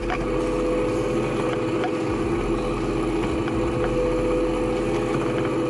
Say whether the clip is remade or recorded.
recorded